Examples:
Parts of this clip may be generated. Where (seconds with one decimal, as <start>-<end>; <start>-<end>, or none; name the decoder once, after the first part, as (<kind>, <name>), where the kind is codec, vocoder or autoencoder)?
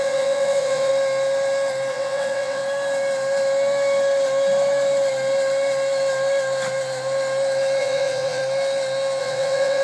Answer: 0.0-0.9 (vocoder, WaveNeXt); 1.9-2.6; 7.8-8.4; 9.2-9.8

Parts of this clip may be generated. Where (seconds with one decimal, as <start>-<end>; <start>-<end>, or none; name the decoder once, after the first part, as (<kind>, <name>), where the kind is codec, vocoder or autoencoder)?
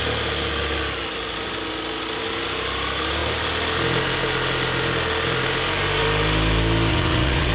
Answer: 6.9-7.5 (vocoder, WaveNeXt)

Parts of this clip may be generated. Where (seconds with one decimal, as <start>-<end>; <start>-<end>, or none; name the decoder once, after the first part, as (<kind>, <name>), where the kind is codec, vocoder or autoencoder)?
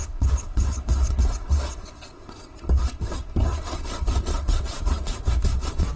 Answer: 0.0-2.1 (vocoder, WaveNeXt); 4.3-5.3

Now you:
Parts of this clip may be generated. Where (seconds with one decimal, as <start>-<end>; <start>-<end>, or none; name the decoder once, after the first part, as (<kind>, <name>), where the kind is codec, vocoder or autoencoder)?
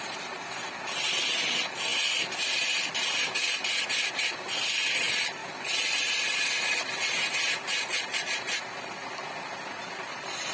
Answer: none